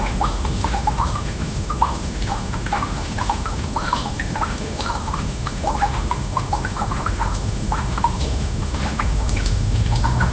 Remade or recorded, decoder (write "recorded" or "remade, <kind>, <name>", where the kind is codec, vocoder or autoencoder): remade, autoencoder, DAC-VAE